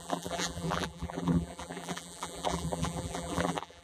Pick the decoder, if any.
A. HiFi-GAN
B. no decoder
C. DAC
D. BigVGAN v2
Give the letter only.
D